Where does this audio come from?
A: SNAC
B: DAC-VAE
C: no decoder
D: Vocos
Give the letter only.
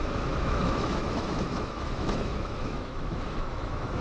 B